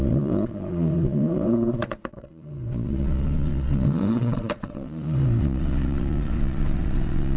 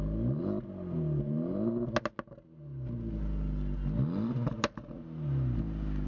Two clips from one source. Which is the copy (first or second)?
first